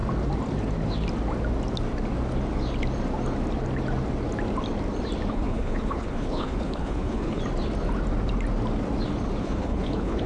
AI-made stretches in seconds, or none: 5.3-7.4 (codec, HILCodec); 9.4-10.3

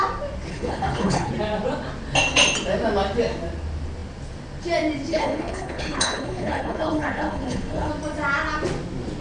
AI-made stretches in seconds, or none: 0.5-1.3 (codec, HILCodec); 5.1-7.9